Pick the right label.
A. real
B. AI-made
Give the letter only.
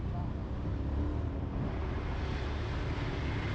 A